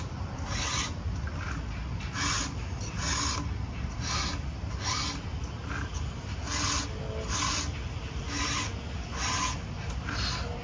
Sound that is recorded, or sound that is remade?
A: recorded